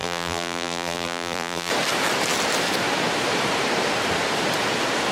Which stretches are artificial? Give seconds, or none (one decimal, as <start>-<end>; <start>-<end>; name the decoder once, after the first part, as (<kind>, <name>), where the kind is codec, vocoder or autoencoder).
0.0-1.7 (vocoder, BigVGAN v2)